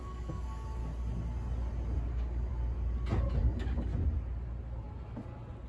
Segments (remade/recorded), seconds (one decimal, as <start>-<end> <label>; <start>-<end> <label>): 0.0-0.8 remade; 0.8-2.1 recorded; 2.1-2.5 remade; 2.5-3.4 recorded; 3.4-3.9 remade; 3.9-5.7 recorded